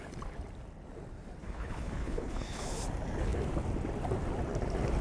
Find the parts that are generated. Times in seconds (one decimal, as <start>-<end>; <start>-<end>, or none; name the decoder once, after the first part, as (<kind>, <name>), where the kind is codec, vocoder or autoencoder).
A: 1.4-2.8 (codec, HILCodec)

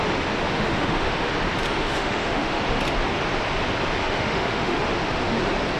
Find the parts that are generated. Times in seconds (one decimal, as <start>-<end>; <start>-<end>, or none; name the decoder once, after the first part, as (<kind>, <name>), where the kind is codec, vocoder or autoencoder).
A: 0.5-1.3 (autoencoder, DAC-VAE); 1.8-2.6; 4.0-4.8

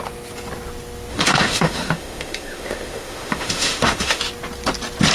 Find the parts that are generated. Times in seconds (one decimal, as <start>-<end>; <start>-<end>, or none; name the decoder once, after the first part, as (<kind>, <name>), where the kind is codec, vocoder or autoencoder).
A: 1.1-4.2 (autoencoder, DAC-VAE)

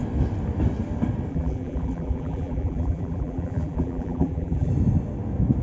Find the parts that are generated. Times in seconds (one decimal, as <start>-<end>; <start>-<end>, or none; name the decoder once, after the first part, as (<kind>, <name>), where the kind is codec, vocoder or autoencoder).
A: 1.3-4.7 (vocoder, BigVGAN v2)

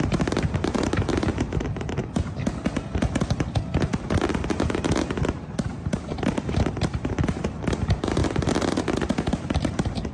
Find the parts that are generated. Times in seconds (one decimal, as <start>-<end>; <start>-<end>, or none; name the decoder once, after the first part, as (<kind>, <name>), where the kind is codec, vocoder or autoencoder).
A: 0.0-2.0 (vocoder, BigVGAN v2); 5.3-8.2; 9.6-10.1

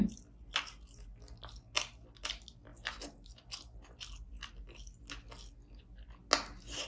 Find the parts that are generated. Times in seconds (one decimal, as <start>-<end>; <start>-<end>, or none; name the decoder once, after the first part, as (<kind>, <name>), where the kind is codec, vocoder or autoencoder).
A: none

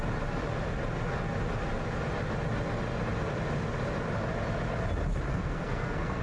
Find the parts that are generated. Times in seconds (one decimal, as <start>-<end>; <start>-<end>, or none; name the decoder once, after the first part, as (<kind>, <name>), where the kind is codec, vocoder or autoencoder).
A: 5.3-6.2 (codec, SNAC)

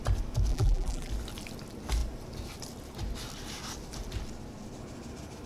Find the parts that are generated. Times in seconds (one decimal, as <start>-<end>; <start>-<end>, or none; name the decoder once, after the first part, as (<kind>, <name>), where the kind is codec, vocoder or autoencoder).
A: 0.5-1.1 (vocoder, BigVGAN v2)